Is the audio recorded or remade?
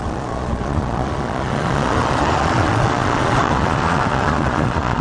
remade